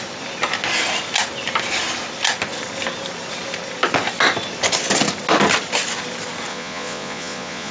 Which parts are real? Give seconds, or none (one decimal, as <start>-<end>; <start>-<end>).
0.0-6.5